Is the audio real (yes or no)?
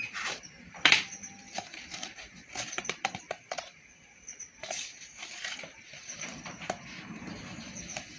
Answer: no